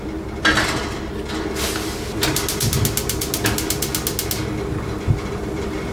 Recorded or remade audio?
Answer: recorded